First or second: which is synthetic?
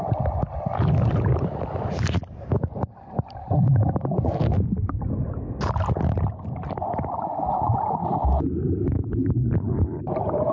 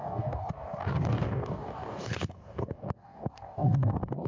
second